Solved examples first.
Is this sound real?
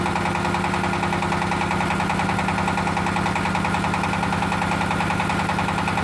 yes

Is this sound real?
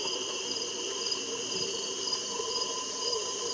no